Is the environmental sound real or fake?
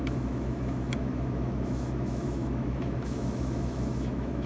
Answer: fake